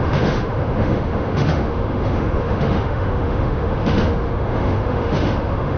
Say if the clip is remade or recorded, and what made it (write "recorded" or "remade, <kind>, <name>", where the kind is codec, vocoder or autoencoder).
remade, autoencoder, DAC-VAE